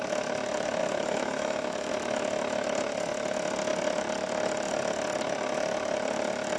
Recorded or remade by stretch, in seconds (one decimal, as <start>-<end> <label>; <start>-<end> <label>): 0.0-0.8 recorded; 0.8-1.9 remade; 1.9-6.6 recorded